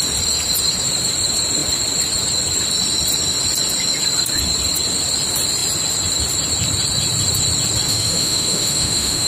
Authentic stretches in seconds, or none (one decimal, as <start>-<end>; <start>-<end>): 0.0-7.9